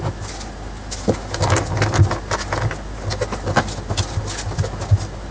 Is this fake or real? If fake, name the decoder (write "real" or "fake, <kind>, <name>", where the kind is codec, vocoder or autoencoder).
real